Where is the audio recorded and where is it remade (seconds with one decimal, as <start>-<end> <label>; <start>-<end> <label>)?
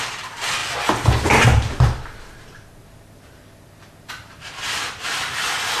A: 0.0-5.8 recorded